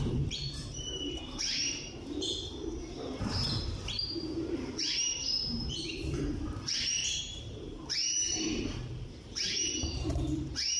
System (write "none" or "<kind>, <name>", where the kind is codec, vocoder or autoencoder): vocoder, BigVGAN v2